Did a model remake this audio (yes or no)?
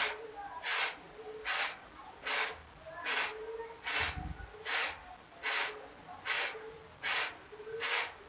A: no